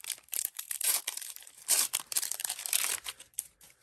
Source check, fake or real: fake